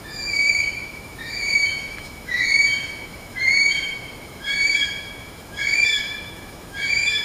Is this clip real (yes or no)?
no